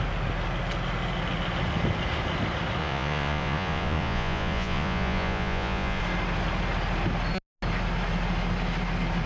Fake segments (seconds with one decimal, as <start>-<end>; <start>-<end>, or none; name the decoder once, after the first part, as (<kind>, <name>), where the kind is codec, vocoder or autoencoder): 2.8-6.0 (vocoder, Vocos)